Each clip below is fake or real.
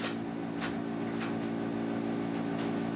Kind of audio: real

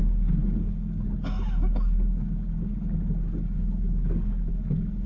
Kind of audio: fake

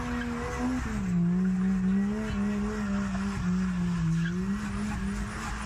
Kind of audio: real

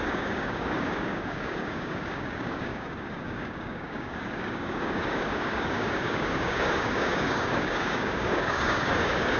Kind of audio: fake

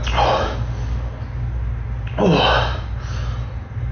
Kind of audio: real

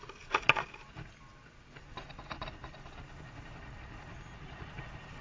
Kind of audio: real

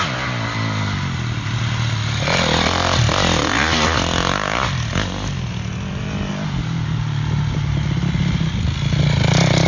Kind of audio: real